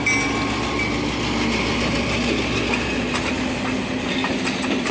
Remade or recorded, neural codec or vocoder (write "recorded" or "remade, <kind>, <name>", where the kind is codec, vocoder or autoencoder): recorded